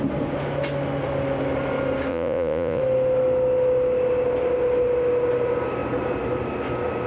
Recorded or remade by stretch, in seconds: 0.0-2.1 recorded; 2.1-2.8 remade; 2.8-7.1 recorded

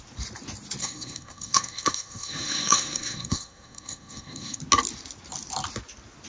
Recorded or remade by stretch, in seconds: 0.0-0.8 recorded; 0.8-4.6 remade; 4.6-6.3 recorded